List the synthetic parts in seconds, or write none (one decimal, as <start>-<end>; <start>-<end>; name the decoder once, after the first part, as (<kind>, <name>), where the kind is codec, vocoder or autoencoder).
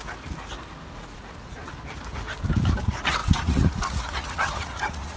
0.9-1.6 (vocoder, Vocos); 2.8-5.2